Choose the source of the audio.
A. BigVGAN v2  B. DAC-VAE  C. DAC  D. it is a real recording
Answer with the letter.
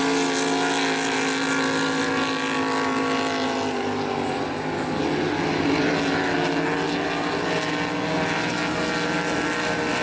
D